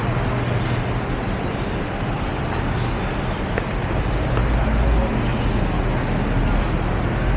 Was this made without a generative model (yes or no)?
yes